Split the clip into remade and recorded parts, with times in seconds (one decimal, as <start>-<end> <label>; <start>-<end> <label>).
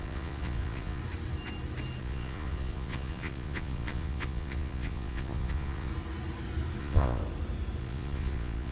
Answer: 0.0-1.0 remade; 1.0-2.0 recorded; 2.0-5.9 remade; 5.9-6.8 recorded; 6.8-7.2 remade; 7.2-7.8 recorded; 7.8-8.7 remade